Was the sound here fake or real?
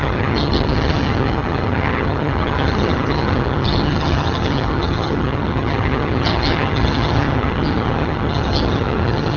fake